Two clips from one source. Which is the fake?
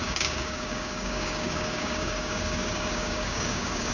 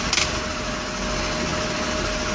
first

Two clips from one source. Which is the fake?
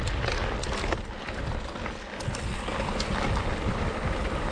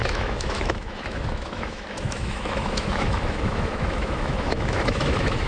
second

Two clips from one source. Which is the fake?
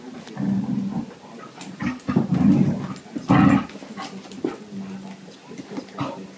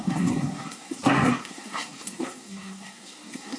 second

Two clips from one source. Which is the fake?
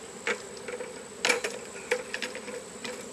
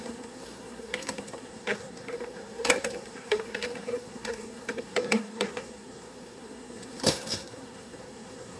second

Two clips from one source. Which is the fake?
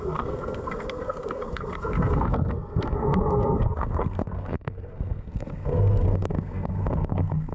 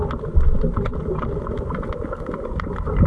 first